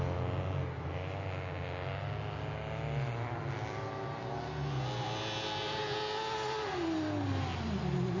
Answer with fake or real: real